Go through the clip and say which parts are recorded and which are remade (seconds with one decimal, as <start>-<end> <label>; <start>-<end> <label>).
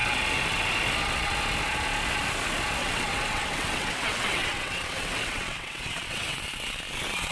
0.0-2.8 recorded; 2.8-6.4 remade; 6.4-7.3 recorded